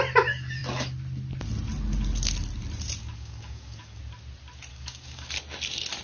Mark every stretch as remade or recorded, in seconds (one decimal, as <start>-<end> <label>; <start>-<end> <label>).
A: 0.0-3.0 recorded; 3.0-4.0 remade; 4.0-4.7 recorded; 4.7-5.3 remade; 5.3-6.0 recorded